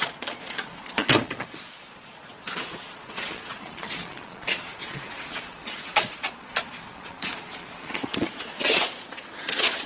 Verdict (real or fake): fake